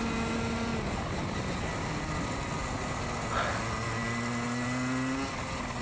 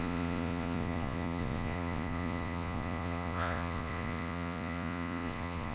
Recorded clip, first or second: first